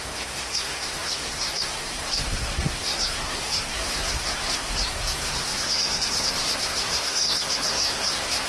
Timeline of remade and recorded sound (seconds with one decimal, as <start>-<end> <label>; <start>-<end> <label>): 0.0-8.5 remade